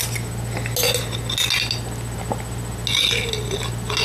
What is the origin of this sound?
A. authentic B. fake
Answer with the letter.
A